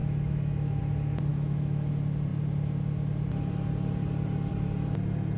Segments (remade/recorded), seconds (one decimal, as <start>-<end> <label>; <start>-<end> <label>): 0.0-0.8 remade; 0.8-1.3 recorded; 1.3-1.9 remade; 1.9-5.4 recorded